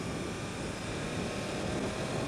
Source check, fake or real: real